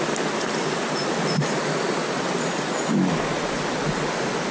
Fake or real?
real